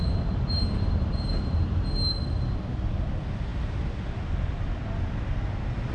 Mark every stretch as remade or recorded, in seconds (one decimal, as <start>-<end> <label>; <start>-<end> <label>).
0.0-0.5 recorded; 0.5-1.8 remade; 1.8-5.9 recorded